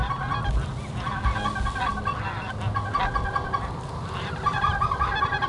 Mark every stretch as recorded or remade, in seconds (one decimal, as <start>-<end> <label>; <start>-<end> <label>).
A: 0.0-5.5 recorded